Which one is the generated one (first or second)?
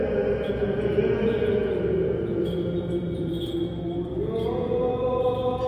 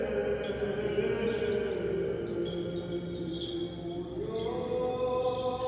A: first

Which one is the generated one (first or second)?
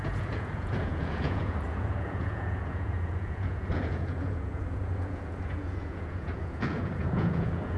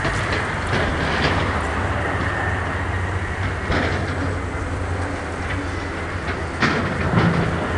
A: first